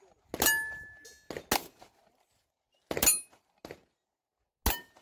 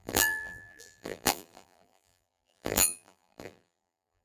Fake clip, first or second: second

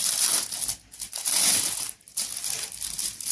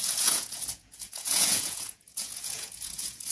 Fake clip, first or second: second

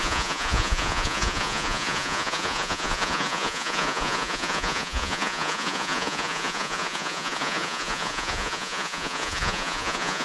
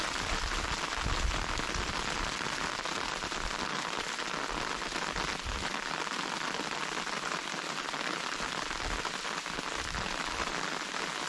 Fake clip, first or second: first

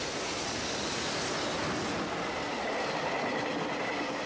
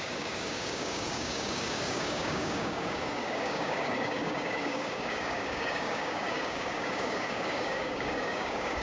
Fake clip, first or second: second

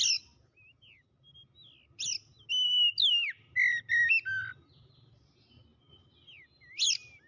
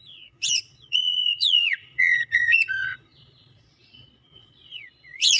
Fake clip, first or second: second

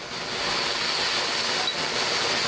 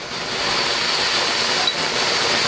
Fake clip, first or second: second